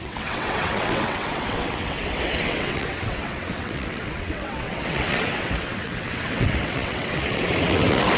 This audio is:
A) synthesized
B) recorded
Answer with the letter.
A